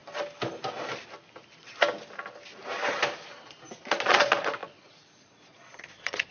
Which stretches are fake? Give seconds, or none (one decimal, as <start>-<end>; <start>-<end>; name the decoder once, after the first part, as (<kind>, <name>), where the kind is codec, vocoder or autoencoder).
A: 3.8-6.3 (vocoder, Vocos)